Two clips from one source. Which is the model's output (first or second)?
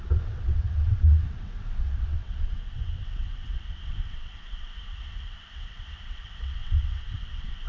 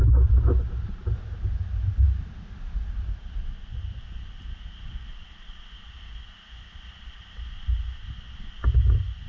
first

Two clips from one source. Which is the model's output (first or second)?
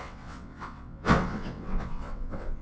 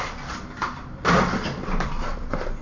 first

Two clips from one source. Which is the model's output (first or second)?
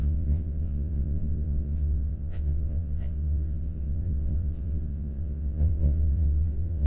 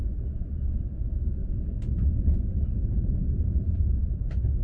first